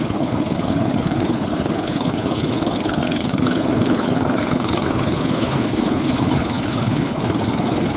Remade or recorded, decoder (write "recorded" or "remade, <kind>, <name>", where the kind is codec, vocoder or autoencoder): remade, codec, HILCodec